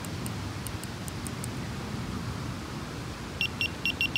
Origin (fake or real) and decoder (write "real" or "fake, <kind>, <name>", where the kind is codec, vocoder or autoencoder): real